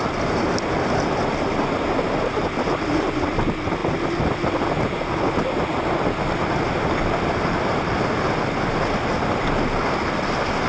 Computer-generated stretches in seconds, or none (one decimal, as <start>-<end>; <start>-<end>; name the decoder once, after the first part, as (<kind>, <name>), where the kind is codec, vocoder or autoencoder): none